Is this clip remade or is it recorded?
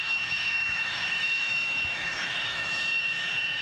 remade